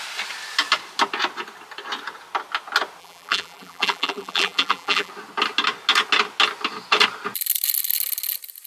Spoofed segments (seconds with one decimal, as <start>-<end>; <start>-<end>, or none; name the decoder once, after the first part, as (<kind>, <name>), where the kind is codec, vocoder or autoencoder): 3.0-5.1 (vocoder, BigVGAN v2)